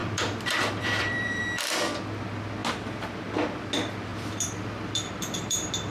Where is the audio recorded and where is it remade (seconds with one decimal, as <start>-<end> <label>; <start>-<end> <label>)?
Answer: 0.0-1.4 remade; 1.4-4.1 recorded; 4.1-5.1 remade; 5.1-5.9 recorded